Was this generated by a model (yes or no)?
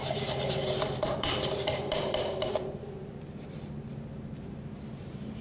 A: yes